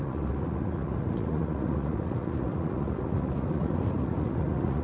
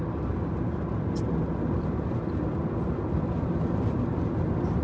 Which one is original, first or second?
second